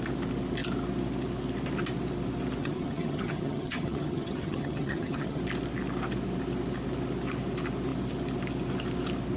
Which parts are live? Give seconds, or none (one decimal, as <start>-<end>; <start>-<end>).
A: 0.0-2.6; 5.4-9.4